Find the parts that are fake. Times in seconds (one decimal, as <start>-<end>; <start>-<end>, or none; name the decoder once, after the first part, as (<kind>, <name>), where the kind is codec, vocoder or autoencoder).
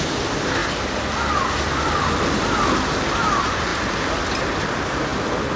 none